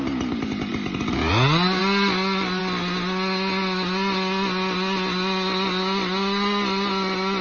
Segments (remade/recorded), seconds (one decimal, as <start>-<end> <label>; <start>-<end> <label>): 0.0-7.4 recorded